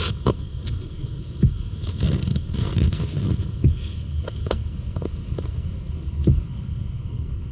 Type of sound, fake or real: fake